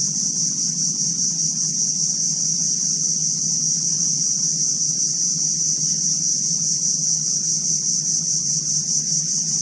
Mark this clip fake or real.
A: real